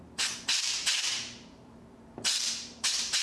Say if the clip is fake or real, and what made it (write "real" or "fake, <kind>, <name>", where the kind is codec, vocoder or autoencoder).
fake, vocoder, BigVGAN v2